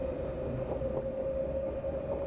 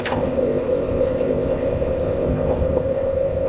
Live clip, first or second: first